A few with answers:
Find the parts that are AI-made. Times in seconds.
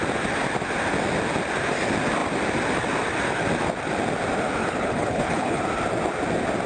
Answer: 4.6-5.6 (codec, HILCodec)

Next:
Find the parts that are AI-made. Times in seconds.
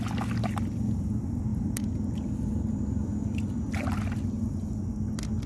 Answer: none